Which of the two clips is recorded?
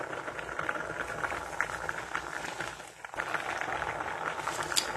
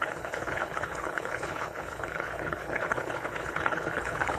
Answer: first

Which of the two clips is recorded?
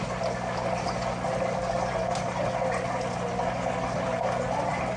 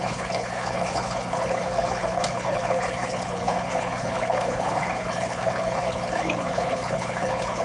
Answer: first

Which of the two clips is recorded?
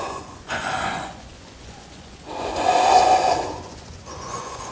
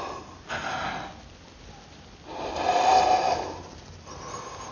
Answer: second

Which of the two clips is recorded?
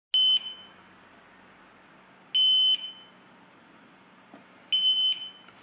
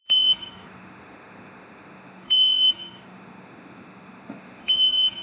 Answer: first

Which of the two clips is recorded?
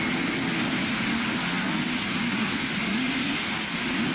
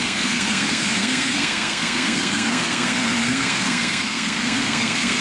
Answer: first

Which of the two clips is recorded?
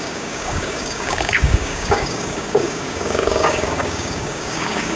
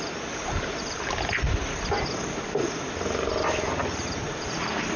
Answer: second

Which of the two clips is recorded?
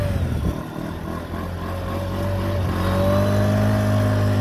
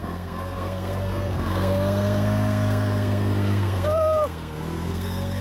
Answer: first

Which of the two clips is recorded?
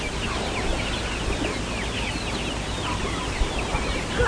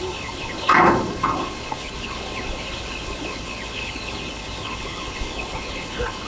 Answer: first